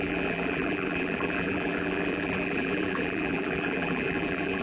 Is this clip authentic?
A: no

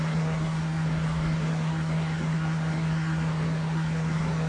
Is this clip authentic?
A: no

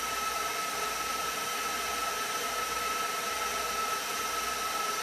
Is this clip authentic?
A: no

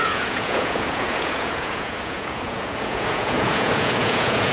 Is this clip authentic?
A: no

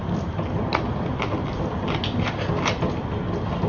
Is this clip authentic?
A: yes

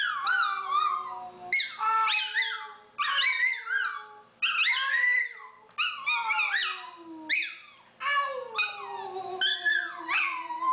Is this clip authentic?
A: yes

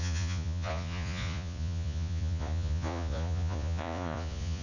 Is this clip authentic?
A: no